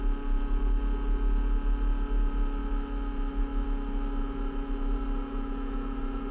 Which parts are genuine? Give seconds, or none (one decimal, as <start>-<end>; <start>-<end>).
0.0-6.3